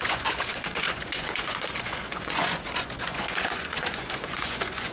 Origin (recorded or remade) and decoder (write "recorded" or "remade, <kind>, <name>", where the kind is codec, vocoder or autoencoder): remade, vocoder, Vocos